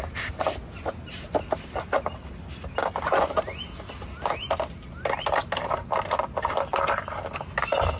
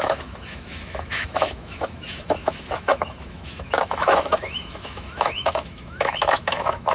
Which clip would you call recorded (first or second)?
first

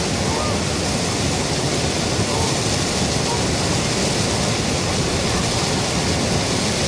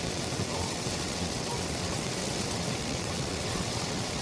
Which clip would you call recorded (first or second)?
first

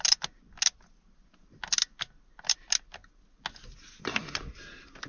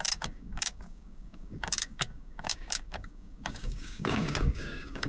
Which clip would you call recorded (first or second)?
first